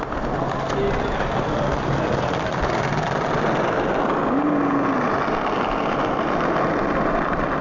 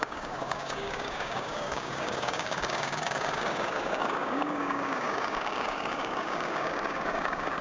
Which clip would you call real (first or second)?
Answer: first